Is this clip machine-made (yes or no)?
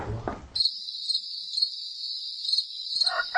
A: no